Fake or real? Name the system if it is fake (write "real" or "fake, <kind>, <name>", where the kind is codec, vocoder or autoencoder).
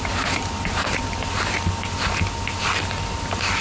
fake, vocoder, BigVGAN v2